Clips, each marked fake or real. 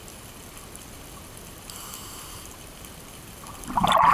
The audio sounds real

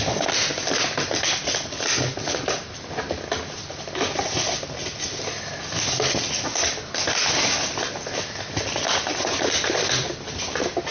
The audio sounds real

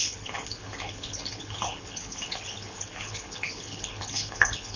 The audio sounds fake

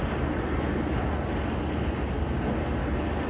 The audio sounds real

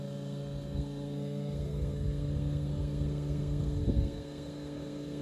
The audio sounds fake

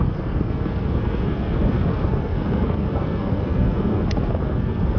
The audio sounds fake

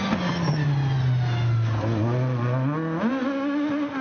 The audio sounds real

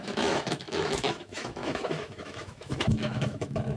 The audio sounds fake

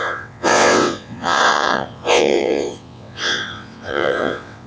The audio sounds fake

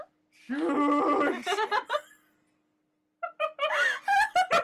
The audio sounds real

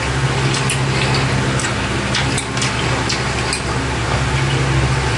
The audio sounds real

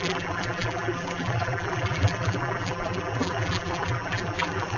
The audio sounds fake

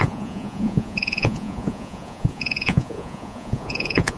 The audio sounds fake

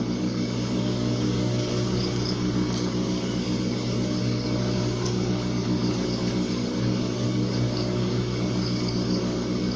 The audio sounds fake